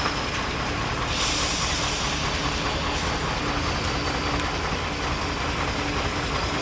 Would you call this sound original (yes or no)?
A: yes